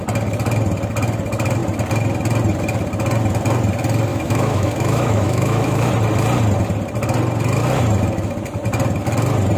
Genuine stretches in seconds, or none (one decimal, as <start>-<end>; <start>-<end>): 0.0-4.1; 5.9-9.6